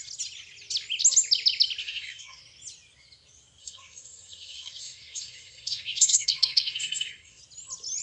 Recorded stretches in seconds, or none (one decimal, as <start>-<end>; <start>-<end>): 0.0-1.8; 2.4-3.6; 7.4-8.0